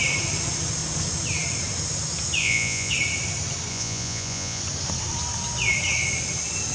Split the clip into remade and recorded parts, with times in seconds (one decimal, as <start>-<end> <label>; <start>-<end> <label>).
0.0-2.4 recorded; 2.4-2.9 remade; 2.9-3.7 recorded; 3.7-4.6 remade; 4.6-6.7 recorded